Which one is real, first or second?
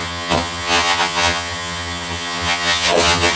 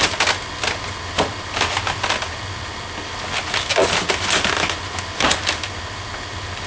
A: second